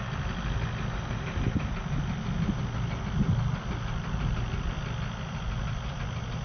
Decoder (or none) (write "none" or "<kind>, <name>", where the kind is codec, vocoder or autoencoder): none